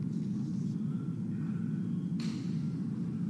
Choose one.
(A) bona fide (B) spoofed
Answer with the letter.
A